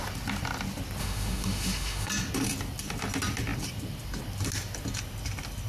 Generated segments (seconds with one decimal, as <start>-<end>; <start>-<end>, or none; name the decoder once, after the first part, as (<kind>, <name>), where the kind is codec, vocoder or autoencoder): 1.0-2.1 (autoencoder, DAC-VAE)